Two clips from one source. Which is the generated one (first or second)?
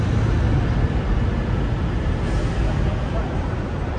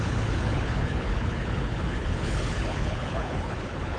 second